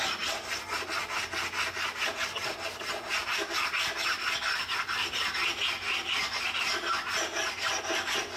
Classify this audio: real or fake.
real